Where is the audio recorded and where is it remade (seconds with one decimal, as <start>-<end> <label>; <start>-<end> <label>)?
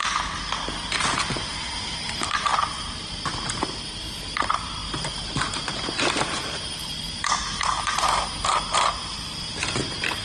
0.0-10.2 remade